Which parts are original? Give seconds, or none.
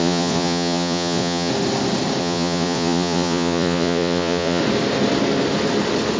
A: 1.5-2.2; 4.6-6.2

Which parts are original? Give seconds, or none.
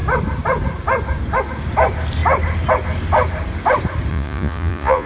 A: 0.0-4.1